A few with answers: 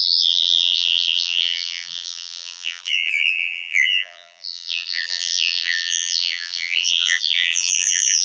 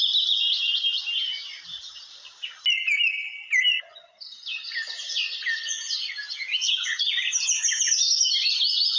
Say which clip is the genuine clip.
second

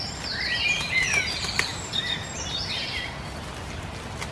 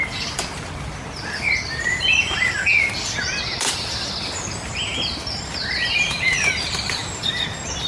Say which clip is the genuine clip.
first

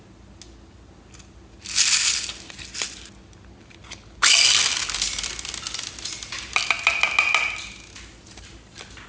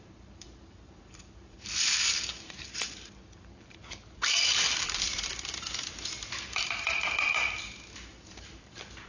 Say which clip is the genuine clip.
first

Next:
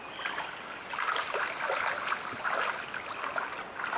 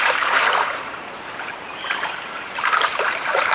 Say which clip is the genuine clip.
first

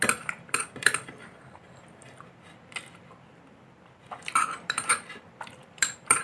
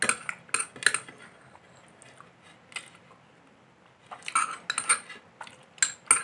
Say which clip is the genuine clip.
second